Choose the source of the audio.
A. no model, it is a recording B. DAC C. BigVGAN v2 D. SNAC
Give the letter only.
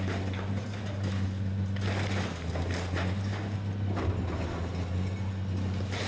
A